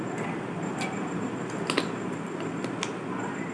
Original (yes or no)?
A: yes